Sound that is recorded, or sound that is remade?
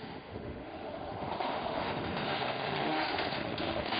remade